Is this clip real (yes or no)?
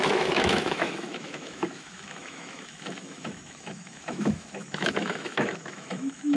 no